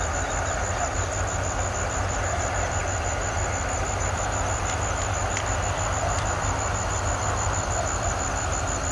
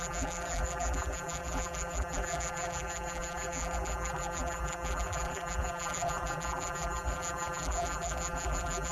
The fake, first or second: second